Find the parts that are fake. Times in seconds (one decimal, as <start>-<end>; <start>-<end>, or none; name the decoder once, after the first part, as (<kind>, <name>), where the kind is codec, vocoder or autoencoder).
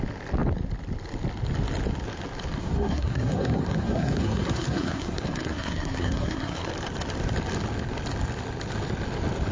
2.6-6.7 (codec, SNAC)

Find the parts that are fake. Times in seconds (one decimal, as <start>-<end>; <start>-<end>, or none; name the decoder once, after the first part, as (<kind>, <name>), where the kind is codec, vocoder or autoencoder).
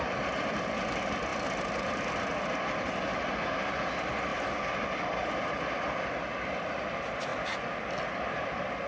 1.3-2.3 (vocoder, BigVGAN v2); 4.3-5.3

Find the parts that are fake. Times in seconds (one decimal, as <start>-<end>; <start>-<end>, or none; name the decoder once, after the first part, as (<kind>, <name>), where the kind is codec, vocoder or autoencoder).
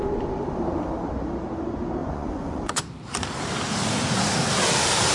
2.0-2.8 (vocoder, Vocos)